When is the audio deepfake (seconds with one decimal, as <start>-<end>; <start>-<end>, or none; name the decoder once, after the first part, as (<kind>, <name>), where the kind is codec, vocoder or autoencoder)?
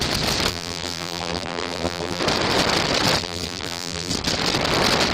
0.5-2.2 (vocoder, BigVGAN v2); 3.2-4.1